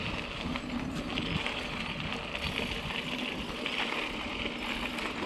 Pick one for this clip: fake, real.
real